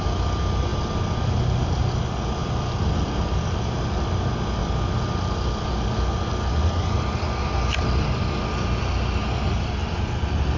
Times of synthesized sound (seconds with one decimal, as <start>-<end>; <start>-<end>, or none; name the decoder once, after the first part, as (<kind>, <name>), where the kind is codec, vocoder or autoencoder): none